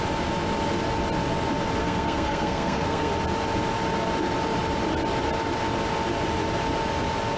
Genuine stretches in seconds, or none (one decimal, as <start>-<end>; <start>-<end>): 0.0-1.8; 3.1-7.4

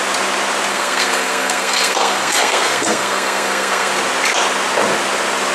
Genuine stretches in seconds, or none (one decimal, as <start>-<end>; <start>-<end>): 0.0-0.7; 3.9-5.5

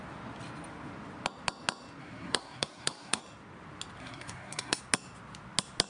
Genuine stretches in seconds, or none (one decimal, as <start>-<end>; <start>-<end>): 0.0-2.0; 3.2-4.0; 4.8-5.9

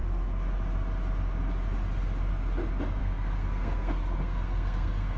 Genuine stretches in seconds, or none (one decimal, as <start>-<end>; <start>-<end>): 0.0-3.0

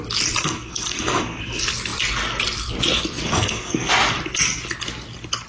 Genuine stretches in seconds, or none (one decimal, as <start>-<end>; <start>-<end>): 0.0-0.4; 1.4-3.3; 3.9-5.5

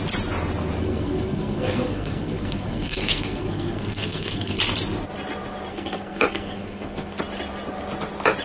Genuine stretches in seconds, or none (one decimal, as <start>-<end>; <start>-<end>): 0.0-0.8; 4.6-5.7; 7.2-8.4

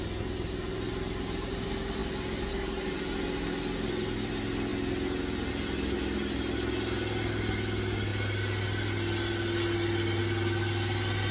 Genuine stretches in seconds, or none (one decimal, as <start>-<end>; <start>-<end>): 0.0-11.3

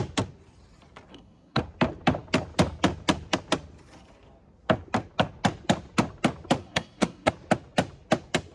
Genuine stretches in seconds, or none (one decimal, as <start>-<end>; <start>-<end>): 0.0-1.1; 1.6-6.6; 7.3-8.5